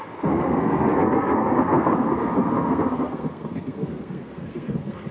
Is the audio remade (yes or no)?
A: yes